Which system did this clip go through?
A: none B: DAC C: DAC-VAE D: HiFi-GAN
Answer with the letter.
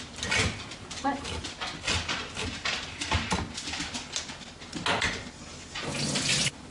A